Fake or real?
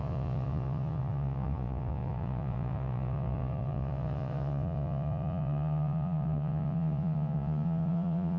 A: fake